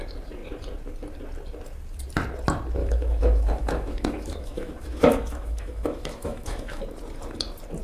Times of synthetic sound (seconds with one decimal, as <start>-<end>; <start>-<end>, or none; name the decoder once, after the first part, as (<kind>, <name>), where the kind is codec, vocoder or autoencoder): 2.8-6.8 (autoencoder, DAC-VAE)

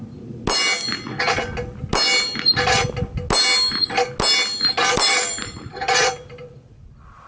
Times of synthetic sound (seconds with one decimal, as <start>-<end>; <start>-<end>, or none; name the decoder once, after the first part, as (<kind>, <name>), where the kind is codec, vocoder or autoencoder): 4.8-7.3 (vocoder, BigVGAN v2)

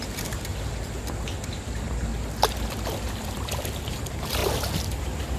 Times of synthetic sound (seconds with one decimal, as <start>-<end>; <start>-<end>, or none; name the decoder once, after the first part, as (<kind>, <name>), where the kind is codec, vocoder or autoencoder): 0.0-0.5 (vocoder, BigVGAN v2); 1.5-2.1; 3.9-4.4; 5.0-5.4

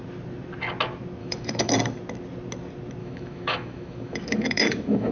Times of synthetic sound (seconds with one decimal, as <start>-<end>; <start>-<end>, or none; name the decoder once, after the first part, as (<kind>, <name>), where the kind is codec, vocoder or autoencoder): 1.2-1.7 (autoencoder, DAC-VAE); 3.0-5.1

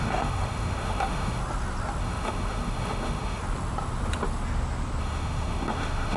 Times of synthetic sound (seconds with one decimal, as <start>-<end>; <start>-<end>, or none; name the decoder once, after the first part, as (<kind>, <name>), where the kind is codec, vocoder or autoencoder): 0.0-1.4 (autoencoder, DAC-VAE); 2.0-3.4; 5.0-6.2

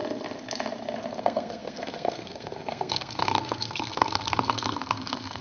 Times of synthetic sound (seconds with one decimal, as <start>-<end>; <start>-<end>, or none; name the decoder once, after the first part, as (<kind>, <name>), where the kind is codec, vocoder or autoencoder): 1.2-5.4 (codec, SNAC)

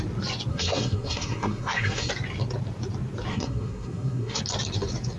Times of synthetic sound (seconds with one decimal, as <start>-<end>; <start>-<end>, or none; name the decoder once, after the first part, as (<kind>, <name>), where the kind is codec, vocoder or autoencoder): 0.5-2.1 (codec, SNAC); 3.3-4.4